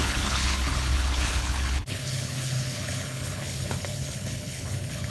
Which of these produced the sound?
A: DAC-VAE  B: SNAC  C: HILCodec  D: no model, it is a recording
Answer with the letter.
C